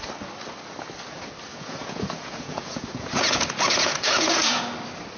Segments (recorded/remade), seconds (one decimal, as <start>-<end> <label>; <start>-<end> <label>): 0.0-1.5 recorded; 1.5-4.6 remade; 4.6-5.2 recorded